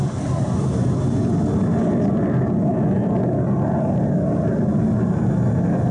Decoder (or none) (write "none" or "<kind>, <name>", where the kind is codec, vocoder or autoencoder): none